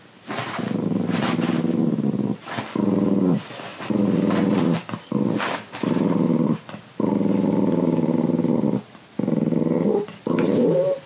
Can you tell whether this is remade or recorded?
recorded